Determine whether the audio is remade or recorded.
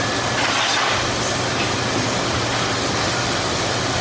recorded